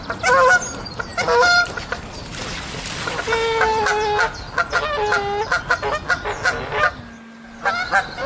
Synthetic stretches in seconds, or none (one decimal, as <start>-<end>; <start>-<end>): none